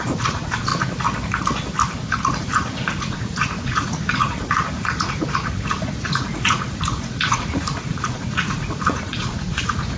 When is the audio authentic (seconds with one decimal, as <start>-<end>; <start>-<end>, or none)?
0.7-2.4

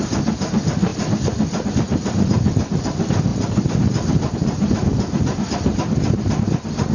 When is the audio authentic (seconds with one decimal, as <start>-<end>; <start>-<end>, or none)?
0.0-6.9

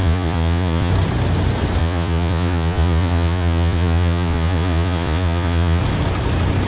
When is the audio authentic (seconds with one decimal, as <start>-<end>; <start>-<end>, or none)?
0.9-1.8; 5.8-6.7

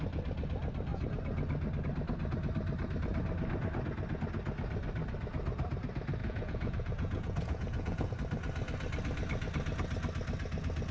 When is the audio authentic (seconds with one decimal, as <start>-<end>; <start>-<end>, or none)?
0.0-6.2; 8.1-10.9